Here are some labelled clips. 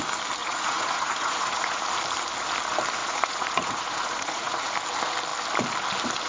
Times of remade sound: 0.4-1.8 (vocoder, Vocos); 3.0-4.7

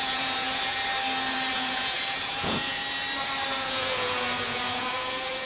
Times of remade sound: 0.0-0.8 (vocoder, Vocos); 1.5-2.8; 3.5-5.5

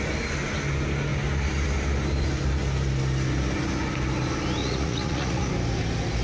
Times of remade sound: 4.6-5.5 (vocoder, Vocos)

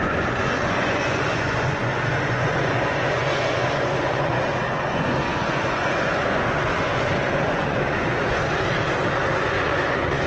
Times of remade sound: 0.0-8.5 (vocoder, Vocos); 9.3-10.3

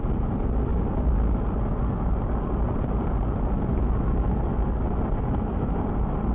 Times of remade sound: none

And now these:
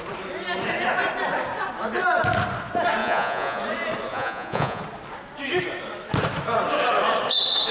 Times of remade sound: 3.0-3.6 (vocoder, Vocos); 4.1-4.8

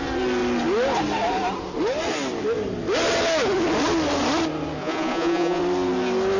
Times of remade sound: 4.8-5.6 (vocoder, Vocos)

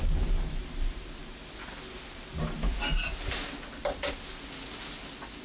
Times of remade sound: none